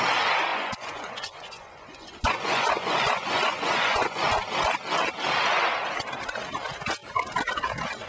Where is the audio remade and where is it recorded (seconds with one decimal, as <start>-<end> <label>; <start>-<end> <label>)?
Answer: 0.0-0.5 recorded; 0.5-4.3 remade; 4.3-8.1 recorded